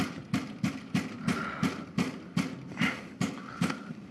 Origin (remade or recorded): recorded